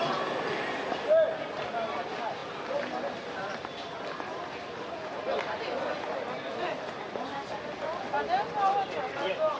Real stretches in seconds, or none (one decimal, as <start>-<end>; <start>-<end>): 0.0-9.6